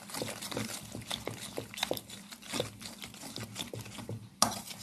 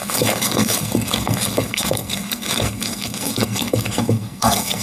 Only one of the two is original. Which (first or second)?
first